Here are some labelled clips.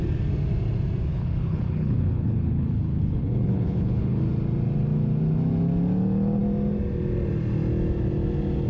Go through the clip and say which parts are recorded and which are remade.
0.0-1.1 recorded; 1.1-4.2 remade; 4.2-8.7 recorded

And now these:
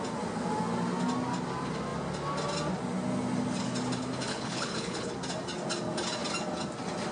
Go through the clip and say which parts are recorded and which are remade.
0.0-4.3 recorded; 4.3-5.1 remade; 5.1-7.1 recorded

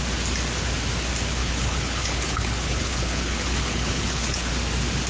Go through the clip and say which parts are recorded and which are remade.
0.0-1.4 recorded; 1.4-4.5 remade; 4.5-5.1 recorded

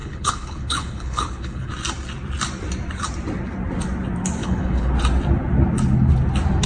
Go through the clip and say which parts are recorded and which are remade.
0.0-1.7 remade; 1.7-4.4 recorded; 4.4-4.9 remade; 4.9-6.7 recorded

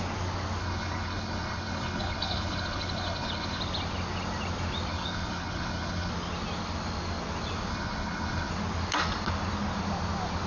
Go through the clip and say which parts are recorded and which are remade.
0.0-0.6 recorded; 0.6-3.6 remade; 3.6-4.9 recorded; 4.9-6.1 remade; 6.1-7.7 recorded; 7.7-8.5 remade; 8.5-10.5 recorded

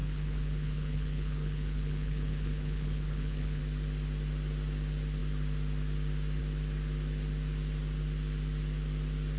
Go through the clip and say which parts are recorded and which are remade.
0.0-3.6 remade; 3.6-9.4 recorded

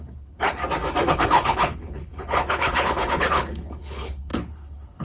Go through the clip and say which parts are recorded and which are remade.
0.0-0.6 remade; 0.6-1.1 recorded; 1.1-5.0 remade